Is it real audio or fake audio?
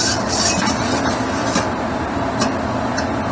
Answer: real